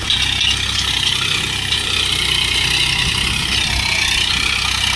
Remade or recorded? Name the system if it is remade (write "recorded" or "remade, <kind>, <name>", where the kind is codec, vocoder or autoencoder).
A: recorded